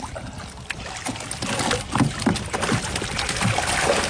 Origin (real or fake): real